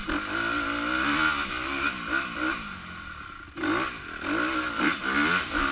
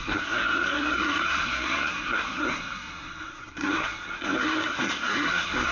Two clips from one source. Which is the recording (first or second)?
first